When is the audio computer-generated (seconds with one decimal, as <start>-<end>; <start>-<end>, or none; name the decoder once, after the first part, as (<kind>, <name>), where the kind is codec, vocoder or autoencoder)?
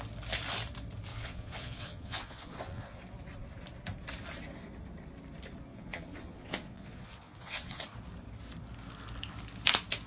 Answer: 1.1-3.0 (vocoder, Vocos); 5.7-7.8